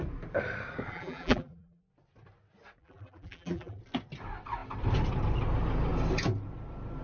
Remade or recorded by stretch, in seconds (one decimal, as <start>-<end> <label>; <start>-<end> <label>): 0.0-0.9 recorded; 0.9-1.8 remade; 1.8-2.8 recorded; 2.8-3.8 remade; 3.8-7.0 recorded